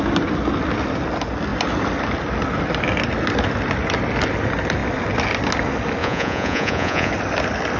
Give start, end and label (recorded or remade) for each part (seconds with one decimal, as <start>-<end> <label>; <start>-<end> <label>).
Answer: 0.0-6.0 recorded; 6.0-7.1 remade; 7.1-7.8 recorded